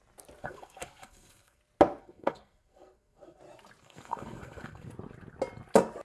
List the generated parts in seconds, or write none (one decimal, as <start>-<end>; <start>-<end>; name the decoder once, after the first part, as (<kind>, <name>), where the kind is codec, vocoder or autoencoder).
0.4-1.6 (codec, SNAC); 2.0-3.4; 3.8-4.9